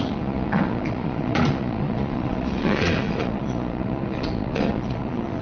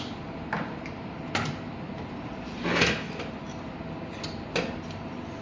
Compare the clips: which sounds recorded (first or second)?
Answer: second